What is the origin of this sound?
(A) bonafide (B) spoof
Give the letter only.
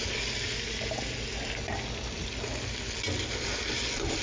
A